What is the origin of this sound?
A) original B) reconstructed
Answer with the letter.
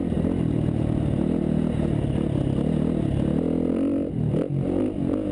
A